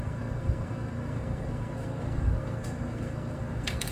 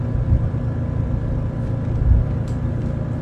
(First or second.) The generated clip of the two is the first